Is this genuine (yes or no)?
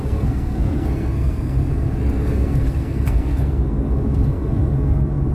no